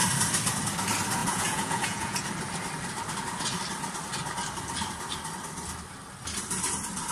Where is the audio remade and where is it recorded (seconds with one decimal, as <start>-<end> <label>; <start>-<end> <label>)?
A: 0.0-1.2 recorded; 1.2-2.3 remade; 2.3-7.1 recorded